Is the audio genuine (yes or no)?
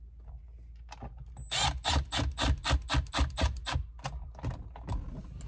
yes